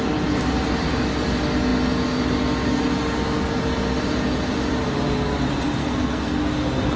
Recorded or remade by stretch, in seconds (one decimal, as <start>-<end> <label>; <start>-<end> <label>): 0.0-5.8 recorded; 5.8-6.4 remade; 6.4-7.0 recorded